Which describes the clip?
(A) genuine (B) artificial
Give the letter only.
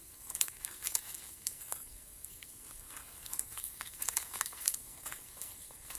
B